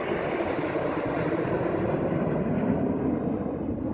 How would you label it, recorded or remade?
recorded